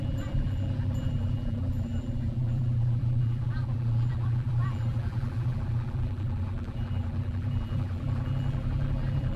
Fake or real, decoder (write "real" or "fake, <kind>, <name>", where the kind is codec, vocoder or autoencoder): fake, vocoder, BigVGAN v2